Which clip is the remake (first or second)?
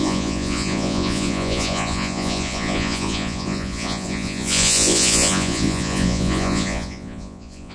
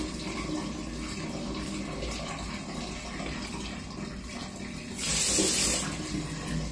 first